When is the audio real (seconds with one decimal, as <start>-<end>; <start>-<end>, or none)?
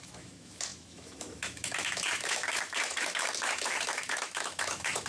none